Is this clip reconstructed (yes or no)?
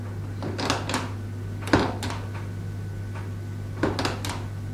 no